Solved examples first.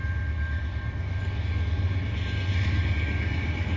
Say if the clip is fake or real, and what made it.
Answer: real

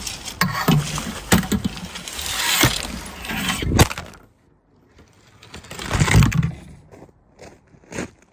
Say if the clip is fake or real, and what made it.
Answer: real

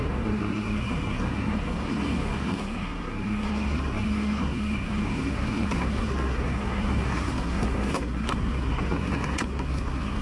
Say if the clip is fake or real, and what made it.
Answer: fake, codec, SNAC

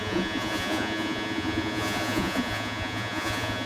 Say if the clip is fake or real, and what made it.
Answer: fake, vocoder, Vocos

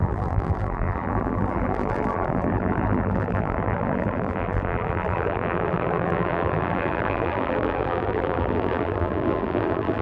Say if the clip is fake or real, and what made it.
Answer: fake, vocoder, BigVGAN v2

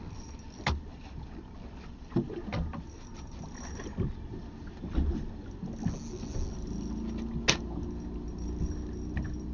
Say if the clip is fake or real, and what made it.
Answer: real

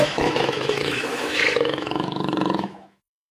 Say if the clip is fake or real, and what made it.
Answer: fake, autoencoder, DAC-VAE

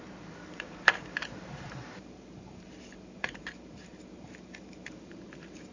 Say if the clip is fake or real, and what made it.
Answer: fake, vocoder, BigVGAN v2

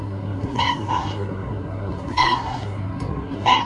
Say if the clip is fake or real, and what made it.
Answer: fake, codec, SNAC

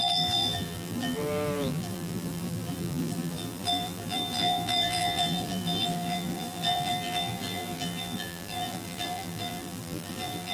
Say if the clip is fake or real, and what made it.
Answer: fake, vocoder, BigVGAN v2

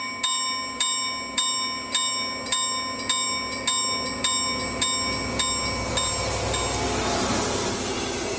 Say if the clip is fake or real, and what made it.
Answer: real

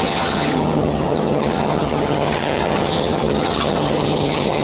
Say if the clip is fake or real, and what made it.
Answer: fake, vocoder, HiFi-GAN